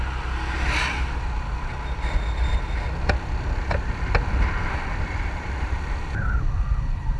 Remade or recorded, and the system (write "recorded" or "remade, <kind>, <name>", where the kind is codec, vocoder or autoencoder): recorded